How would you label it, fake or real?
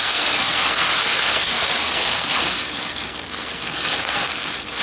fake